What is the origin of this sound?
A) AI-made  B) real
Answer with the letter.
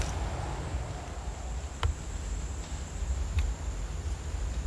B